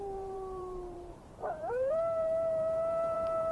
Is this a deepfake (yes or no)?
yes